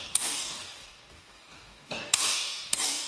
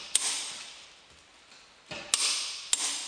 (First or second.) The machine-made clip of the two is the first